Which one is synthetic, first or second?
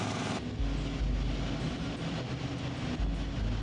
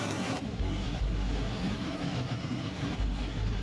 second